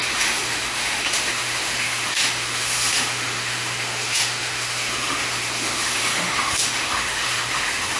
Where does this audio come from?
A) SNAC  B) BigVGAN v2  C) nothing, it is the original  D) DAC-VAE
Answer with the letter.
D